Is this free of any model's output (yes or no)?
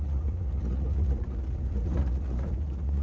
no